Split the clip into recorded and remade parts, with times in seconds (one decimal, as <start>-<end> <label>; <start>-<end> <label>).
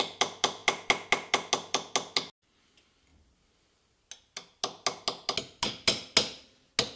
0.0-7.0 recorded